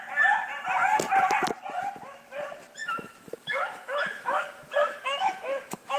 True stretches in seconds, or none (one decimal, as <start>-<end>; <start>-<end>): 0.0-2.8